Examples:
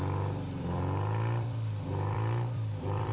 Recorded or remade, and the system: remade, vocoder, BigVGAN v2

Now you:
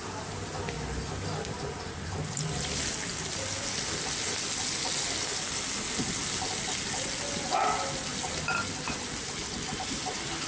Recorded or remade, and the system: recorded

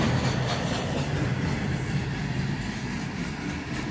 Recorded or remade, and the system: recorded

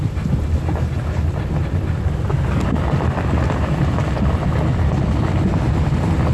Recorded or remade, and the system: recorded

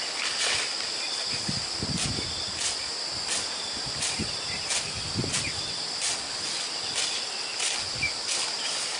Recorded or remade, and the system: recorded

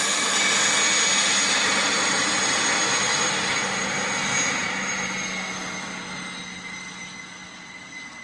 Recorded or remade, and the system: recorded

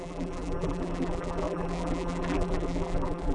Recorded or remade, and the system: remade, vocoder, BigVGAN v2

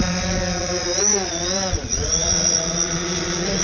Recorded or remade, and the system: remade, vocoder, Vocos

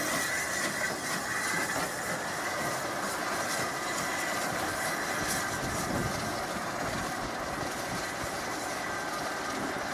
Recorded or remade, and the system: recorded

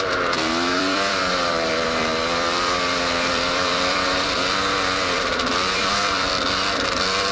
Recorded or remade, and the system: remade, vocoder, BigVGAN v2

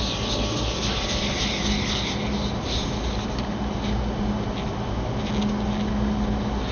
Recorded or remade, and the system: recorded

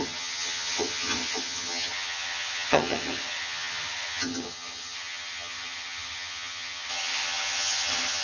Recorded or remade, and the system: remade, vocoder, HiFi-GAN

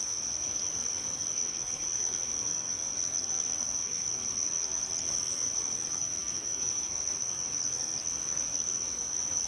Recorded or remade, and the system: remade, codec, SNAC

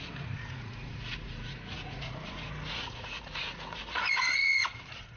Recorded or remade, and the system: remade, vocoder, Vocos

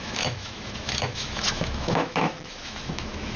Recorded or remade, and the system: remade, autoencoder, DAC-VAE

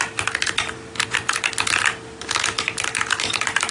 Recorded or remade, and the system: recorded